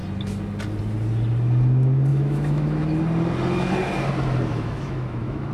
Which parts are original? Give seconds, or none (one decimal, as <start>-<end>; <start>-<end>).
0.0-2.1; 3.0-4.5